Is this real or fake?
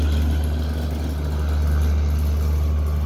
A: real